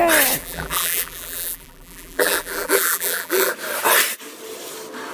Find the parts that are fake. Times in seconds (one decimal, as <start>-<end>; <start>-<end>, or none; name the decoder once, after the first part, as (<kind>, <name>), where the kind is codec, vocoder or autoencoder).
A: 0.4-3.5 (vocoder, BigVGAN v2)